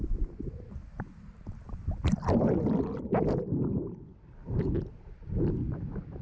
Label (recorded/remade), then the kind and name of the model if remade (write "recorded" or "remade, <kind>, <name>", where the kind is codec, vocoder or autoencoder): remade, vocoder, BigVGAN v2